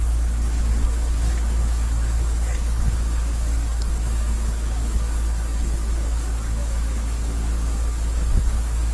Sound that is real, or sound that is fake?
fake